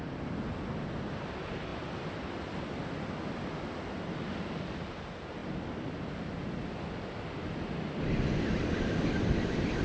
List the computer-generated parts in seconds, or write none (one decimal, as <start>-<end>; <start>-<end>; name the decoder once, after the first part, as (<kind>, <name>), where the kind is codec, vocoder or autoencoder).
none